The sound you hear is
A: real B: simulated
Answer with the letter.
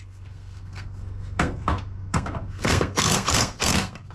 B